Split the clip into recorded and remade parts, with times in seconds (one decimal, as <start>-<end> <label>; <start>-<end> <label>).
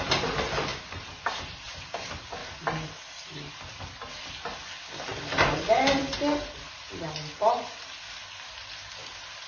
0.0-0.7 recorded; 0.7-1.7 remade; 1.7-2.4 recorded; 2.4-3.5 remade; 3.5-5.1 recorded; 5.1-6.0 remade; 6.0-9.5 recorded